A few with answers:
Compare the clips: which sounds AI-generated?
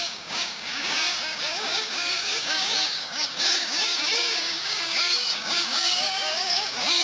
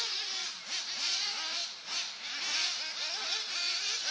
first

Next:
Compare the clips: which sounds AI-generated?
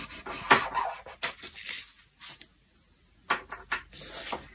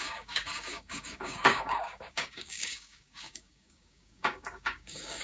second